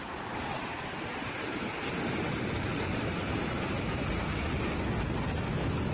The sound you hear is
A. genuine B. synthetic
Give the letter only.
A